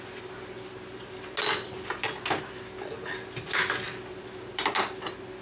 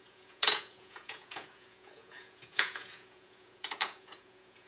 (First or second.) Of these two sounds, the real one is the first